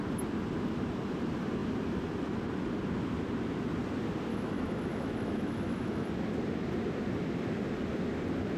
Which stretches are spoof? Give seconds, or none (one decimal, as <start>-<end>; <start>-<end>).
4.3-6.1